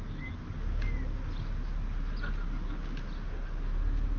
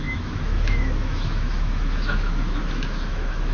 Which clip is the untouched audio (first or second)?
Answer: first